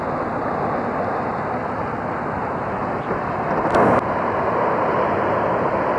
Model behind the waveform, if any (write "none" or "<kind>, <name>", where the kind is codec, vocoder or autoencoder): none